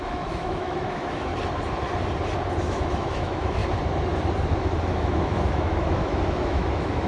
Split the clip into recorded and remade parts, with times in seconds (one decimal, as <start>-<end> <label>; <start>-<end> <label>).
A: 0.0-1.3 remade; 1.3-2.6 recorded; 2.6-3.6 remade; 3.6-4.9 recorded; 4.9-7.1 remade